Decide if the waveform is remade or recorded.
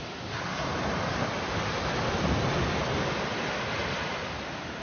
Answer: recorded